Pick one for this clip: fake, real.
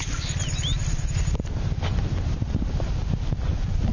real